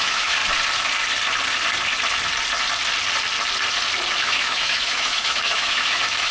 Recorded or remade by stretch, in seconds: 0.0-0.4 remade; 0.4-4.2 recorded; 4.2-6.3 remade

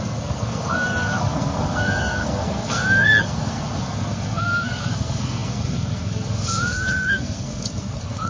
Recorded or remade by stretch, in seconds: 0.0-8.3 remade

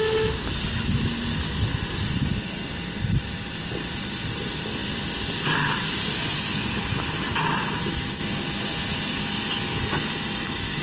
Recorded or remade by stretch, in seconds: 0.0-10.8 recorded

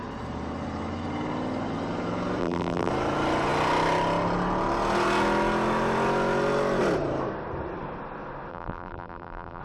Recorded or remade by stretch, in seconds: 0.0-2.4 recorded; 2.4-2.9 remade; 2.9-8.5 recorded; 8.5-9.6 remade

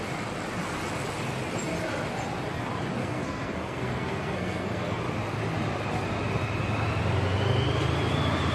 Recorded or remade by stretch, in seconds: 0.0-3.0 recorded; 3.0-5.0 remade; 5.0-8.5 recorded